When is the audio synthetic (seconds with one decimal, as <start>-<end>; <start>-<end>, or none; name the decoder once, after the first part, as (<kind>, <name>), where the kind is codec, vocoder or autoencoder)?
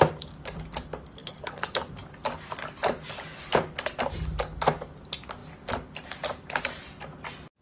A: 1.2-1.7 (codec, HILCodec)